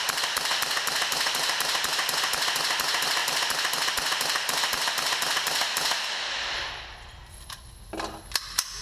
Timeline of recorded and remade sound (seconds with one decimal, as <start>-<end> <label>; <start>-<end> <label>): 0.0-8.8 recorded